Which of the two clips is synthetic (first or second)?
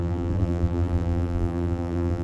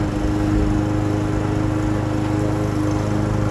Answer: first